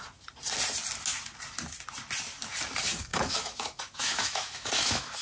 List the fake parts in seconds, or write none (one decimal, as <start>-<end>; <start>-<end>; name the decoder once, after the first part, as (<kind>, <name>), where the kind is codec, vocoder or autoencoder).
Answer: 3.1-5.2 (autoencoder, DAC-VAE)